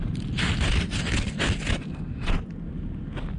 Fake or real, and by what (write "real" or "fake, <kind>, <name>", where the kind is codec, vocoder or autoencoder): real